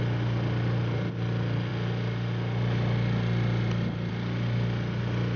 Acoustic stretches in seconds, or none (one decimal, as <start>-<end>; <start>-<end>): 0.0-5.4